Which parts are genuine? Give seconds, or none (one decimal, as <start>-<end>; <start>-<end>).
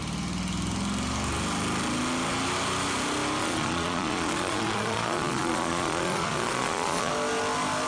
0.0-3.4; 7.1-7.9